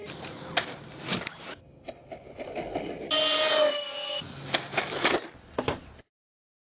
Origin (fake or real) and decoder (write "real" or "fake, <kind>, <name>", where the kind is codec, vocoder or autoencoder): real